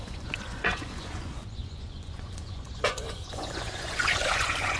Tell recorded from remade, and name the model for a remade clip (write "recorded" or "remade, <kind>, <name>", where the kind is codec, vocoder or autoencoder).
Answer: remade, vocoder, Vocos